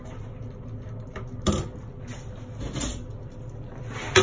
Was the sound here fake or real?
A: real